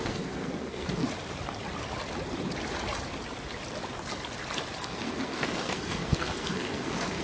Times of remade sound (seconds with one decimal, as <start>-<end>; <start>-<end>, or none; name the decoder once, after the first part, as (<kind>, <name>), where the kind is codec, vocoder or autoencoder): 0.0-1.0 (codec, SNAC); 4.8-7.2